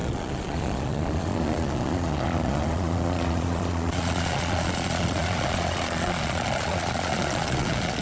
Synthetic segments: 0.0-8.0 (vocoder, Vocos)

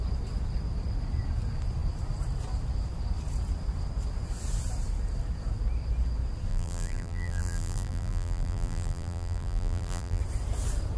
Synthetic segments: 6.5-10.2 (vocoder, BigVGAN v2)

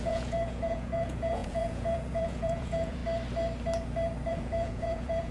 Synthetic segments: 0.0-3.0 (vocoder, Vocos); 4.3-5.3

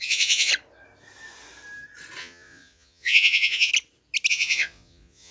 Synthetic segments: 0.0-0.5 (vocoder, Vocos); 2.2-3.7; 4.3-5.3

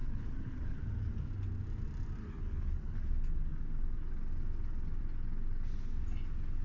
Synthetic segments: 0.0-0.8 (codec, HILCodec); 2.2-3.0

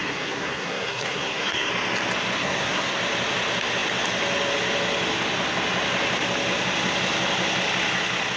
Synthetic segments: 0.0-1.7 (codec, SNAC); 2.4-3.0